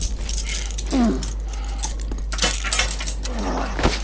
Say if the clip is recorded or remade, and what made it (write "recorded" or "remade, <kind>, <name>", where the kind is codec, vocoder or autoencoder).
recorded